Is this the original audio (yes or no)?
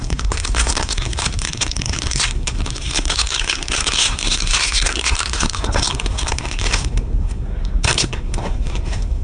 no